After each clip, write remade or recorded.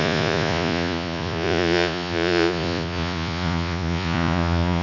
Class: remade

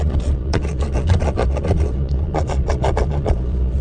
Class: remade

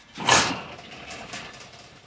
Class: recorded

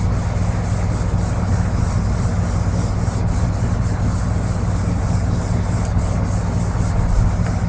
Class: recorded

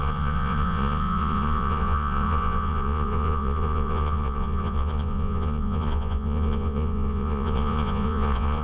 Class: remade